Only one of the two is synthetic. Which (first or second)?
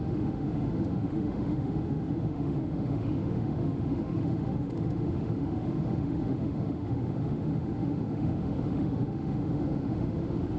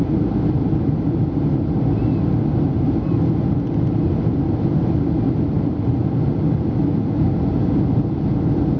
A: first